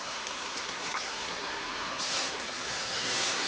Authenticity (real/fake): fake